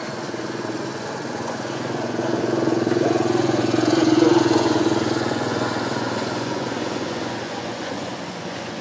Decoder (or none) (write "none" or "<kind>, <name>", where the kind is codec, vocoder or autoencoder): vocoder, Vocos